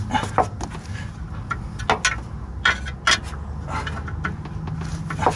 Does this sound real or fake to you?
real